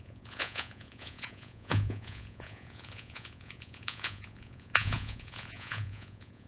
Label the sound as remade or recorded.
remade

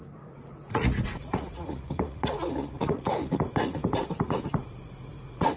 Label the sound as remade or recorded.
remade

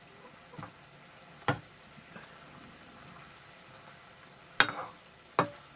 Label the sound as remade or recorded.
recorded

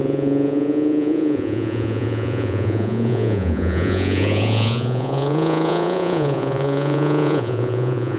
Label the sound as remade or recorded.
remade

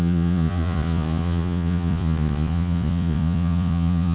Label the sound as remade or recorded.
remade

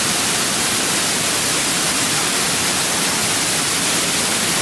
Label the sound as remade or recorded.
recorded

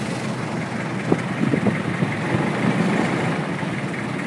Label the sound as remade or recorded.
recorded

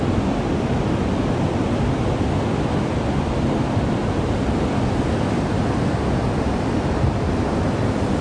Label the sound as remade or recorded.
recorded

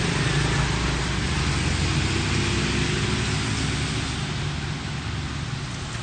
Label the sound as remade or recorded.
recorded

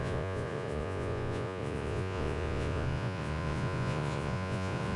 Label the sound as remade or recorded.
remade